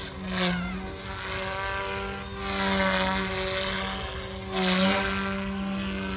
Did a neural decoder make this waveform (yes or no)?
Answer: no